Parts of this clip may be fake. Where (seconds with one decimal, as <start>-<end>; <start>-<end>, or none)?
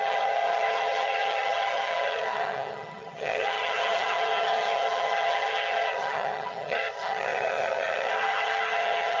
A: 0.0-9.2